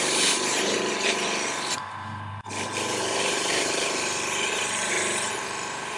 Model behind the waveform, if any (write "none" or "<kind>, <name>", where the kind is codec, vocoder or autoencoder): vocoder, BigVGAN v2